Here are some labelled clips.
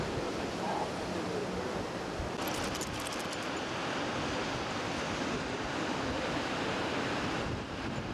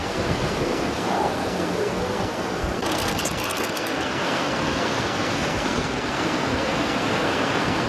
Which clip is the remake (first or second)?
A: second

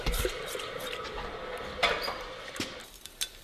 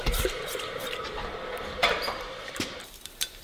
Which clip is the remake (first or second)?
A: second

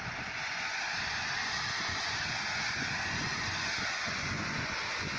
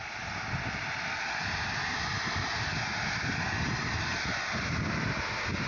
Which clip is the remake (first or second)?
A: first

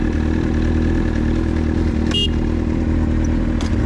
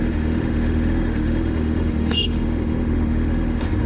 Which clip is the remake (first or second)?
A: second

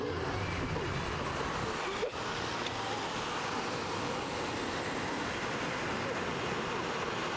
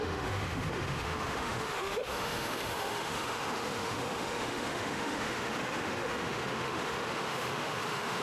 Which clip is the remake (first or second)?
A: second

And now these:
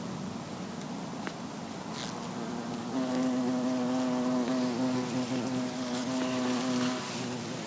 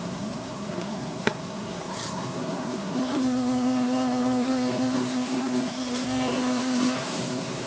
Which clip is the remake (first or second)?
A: second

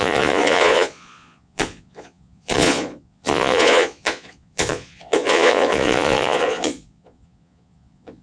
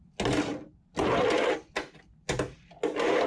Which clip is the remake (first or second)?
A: first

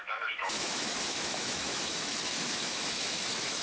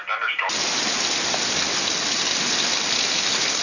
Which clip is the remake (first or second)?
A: first